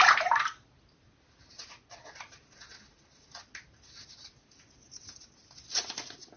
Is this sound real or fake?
real